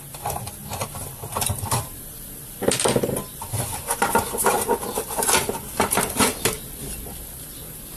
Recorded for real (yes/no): yes